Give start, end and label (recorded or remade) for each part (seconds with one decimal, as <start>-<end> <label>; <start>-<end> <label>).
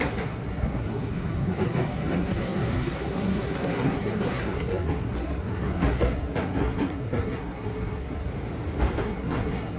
0.0-8.3 remade; 8.3-9.0 recorded; 9.0-9.8 remade